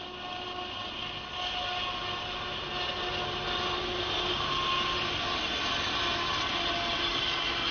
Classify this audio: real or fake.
real